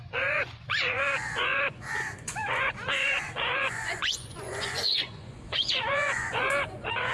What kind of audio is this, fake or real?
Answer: fake